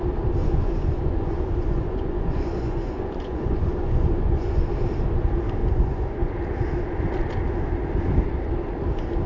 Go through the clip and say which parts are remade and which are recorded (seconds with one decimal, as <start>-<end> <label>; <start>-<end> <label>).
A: 0.0-0.4 recorded; 0.4-4.7 remade; 4.7-5.6 recorded; 5.6-6.3 remade; 6.3-9.3 recorded